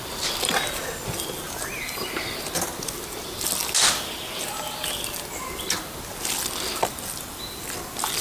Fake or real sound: real